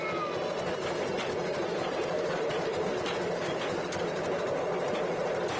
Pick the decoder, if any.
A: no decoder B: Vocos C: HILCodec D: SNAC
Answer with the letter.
A